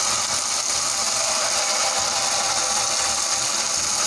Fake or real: real